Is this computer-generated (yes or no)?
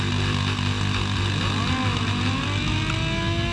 no